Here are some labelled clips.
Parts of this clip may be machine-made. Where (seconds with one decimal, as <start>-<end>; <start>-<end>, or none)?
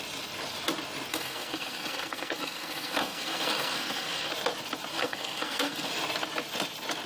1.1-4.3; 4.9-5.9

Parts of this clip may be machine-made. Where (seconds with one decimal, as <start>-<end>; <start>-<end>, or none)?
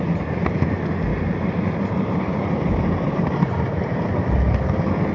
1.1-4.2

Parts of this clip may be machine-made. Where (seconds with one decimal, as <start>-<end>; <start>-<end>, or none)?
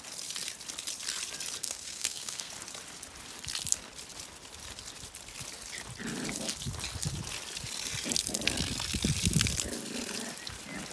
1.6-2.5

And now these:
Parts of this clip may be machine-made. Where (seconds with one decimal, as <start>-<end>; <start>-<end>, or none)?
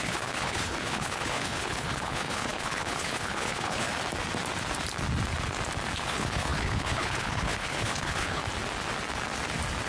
0.0-3.9; 6.0-8.4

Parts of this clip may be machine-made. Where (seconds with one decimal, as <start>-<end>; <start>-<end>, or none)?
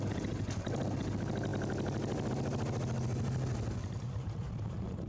none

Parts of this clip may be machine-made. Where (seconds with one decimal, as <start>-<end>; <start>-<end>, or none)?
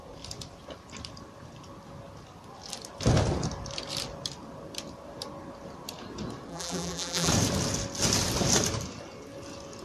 6.5-7.3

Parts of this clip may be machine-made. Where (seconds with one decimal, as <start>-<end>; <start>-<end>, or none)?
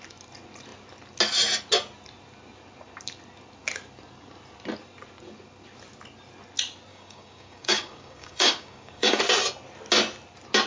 6.9-9.2